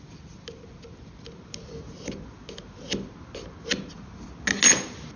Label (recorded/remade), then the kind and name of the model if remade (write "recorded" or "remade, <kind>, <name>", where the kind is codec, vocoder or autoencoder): recorded